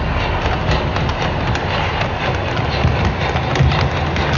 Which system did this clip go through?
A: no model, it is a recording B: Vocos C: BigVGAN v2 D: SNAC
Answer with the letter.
A